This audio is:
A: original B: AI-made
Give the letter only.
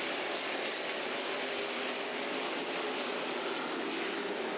A